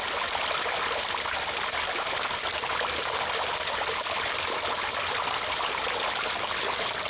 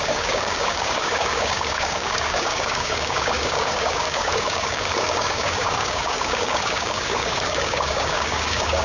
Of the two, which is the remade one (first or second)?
second